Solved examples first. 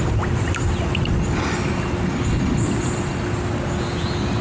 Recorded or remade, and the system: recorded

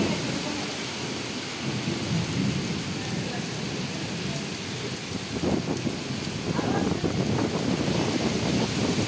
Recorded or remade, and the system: recorded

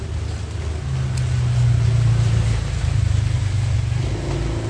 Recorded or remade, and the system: recorded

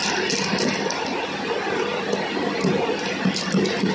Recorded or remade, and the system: recorded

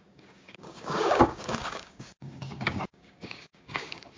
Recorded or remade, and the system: remade, codec, DAC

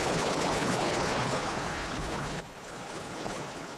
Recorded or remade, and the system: remade, codec, HILCodec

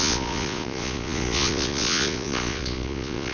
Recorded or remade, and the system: remade, vocoder, Vocos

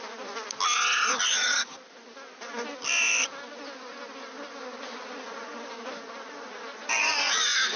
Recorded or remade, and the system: recorded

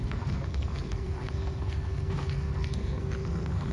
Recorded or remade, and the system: remade, codec, SNAC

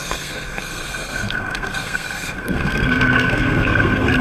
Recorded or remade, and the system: remade, codec, SNAC